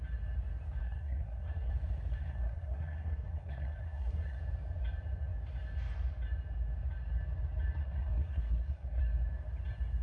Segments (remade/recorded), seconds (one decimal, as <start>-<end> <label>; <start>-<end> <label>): 0.0-0.8 recorded; 0.8-1.7 remade; 1.7-2.1 recorded; 2.1-4.4 remade; 4.4-7.8 recorded; 7.8-9.0 remade; 9.0-10.0 recorded